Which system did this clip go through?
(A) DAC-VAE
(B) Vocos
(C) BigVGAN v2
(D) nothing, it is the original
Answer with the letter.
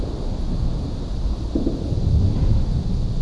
D